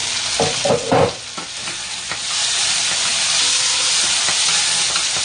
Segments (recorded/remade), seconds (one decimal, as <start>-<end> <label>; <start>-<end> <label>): 0.0-3.4 recorded; 3.4-3.9 remade; 3.9-5.2 recorded